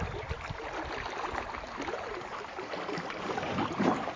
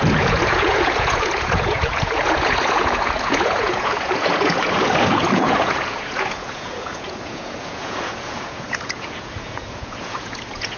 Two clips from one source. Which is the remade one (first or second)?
second